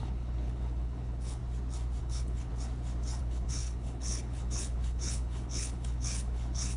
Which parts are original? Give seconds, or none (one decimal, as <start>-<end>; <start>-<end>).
1.4-2.0; 2.5-3.2